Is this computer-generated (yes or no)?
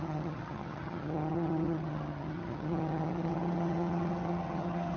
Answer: yes